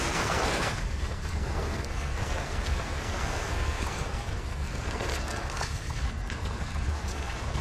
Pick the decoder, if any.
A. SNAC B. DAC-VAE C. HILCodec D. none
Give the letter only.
A